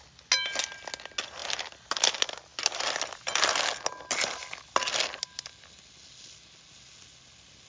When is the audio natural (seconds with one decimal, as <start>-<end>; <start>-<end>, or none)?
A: 0.0-7.7

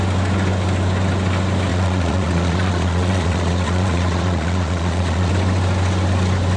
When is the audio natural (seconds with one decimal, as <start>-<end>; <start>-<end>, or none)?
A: 0.0-1.7; 5.3-6.6

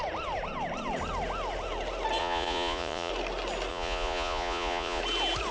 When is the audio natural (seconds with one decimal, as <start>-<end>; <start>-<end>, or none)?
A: 0.0-2.2; 3.1-3.7; 5.0-5.5

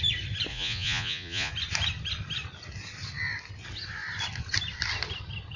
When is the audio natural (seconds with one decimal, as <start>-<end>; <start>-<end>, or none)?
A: 0.0-0.5; 1.5-5.6

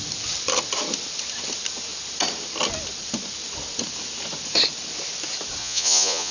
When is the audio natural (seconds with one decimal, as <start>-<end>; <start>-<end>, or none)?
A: 0.0-5.6

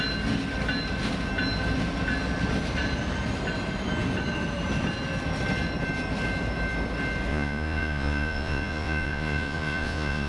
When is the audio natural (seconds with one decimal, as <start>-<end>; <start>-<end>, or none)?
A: 0.0-7.3